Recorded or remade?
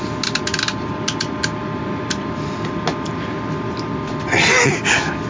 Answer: recorded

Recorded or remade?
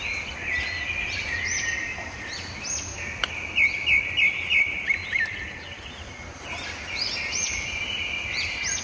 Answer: recorded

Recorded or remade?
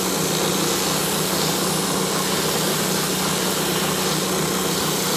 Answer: recorded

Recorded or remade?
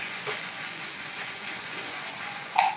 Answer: remade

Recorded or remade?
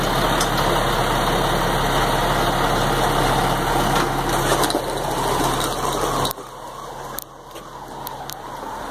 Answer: recorded